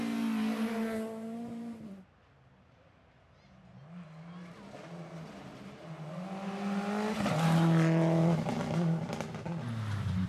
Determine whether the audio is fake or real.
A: real